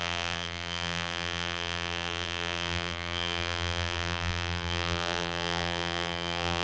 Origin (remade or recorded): remade